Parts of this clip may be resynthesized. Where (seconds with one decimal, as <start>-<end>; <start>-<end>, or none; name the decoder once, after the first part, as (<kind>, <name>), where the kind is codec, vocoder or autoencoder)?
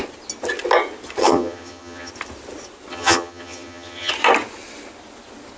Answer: 1.2-2.1 (vocoder, HiFi-GAN); 2.9-4.1